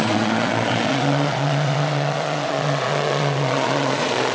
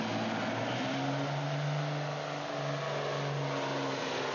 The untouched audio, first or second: second